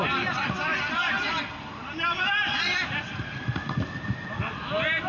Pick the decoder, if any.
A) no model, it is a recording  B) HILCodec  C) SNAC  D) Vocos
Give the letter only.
A